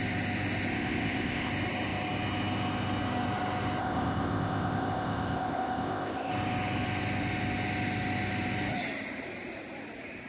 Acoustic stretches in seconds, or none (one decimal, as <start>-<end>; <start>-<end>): 0.0-0.7; 1.5-3.8; 6.3-10.3